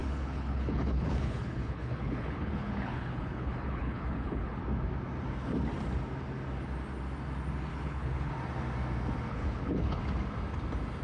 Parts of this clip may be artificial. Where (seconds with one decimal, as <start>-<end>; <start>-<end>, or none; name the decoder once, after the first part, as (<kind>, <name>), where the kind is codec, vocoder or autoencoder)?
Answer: 0.0-4.6 (codec, HILCodec); 7.7-8.3; 9.3-10.0